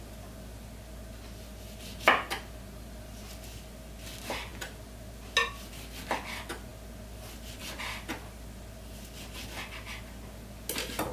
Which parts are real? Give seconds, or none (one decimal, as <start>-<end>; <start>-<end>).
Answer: 0.0-11.1